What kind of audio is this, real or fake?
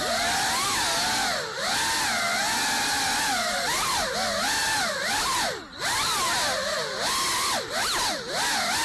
real